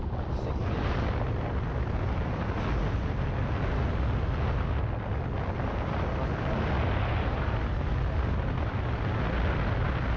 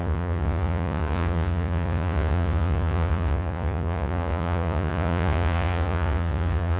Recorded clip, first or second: first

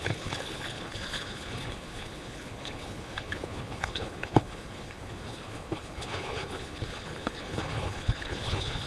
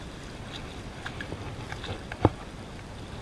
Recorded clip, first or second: second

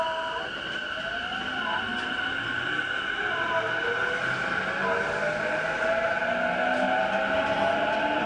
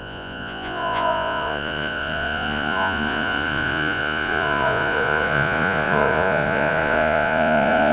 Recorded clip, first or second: first